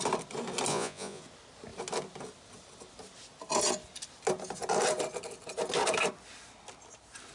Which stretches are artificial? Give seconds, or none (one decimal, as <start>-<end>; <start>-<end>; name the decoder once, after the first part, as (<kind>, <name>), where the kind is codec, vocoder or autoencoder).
0.7-1.2 (vocoder, Vocos)